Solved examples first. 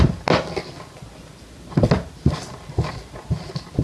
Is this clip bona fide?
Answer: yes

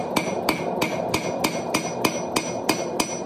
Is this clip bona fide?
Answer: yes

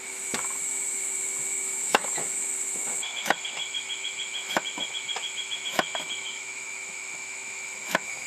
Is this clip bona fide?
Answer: no